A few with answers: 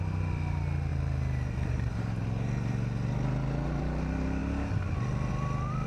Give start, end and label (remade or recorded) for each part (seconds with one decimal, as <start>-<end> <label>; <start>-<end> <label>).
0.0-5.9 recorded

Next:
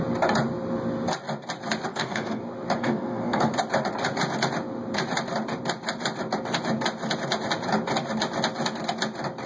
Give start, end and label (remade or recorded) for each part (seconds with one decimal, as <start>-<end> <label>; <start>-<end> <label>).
0.0-1.9 recorded; 1.9-2.4 remade; 2.4-2.8 recorded; 2.8-3.5 remade; 3.5-9.5 recorded

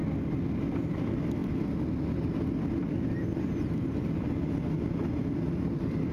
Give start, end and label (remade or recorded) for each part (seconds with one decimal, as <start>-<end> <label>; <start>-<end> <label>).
0.0-6.1 recorded